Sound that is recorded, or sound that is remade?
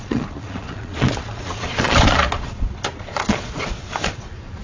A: remade